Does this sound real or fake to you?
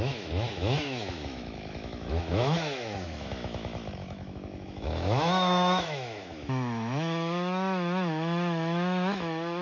fake